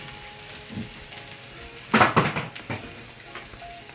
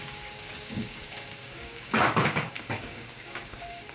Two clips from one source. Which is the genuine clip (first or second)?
first